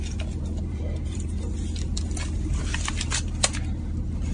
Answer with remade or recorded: remade